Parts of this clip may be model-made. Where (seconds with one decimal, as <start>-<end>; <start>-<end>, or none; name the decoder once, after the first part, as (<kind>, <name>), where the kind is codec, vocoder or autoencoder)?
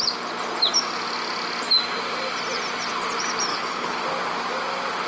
3.5-4.0 (codec, HILCodec)